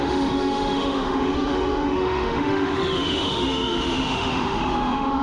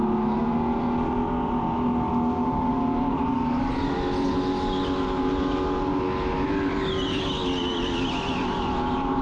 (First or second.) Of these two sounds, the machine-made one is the first